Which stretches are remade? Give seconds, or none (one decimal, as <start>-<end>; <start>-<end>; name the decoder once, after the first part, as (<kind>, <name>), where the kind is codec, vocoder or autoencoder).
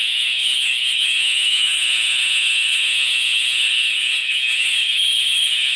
0.0-5.8 (codec, HILCodec)